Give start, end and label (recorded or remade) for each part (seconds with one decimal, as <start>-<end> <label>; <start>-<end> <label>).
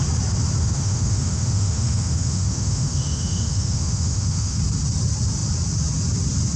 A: 0.0-0.6 recorded; 0.6-4.6 remade; 4.6-6.6 recorded